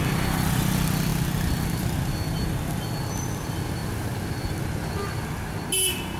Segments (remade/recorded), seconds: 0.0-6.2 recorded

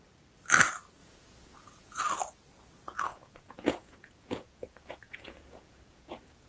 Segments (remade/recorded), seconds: 0.0-1.0 recorded; 1.0-2.0 remade; 2.0-3.1 recorded; 3.1-6.5 remade

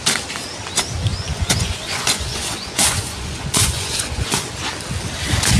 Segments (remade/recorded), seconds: 0.0-1.1 recorded; 1.1-4.5 remade; 4.5-5.6 recorded

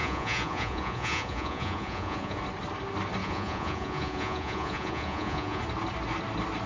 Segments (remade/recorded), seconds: 0.0-2.4 remade; 2.4-3.2 recorded; 3.2-5.6 remade; 5.6-6.7 recorded

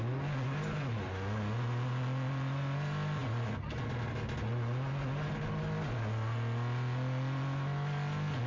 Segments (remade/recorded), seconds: 0.0-8.5 recorded

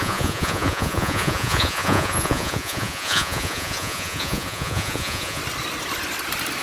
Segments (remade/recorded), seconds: 0.0-5.4 remade; 5.4-6.6 recorded

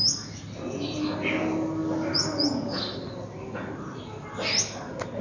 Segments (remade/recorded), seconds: 0.0-5.2 recorded

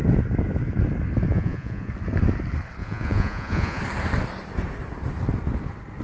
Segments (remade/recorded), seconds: 0.0-1.3 recorded; 1.3-1.9 remade; 1.9-2.8 recorded; 2.8-3.8 remade; 3.8-6.0 recorded